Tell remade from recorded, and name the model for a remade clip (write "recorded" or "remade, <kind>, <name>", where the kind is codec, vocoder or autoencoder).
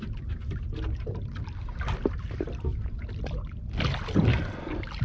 recorded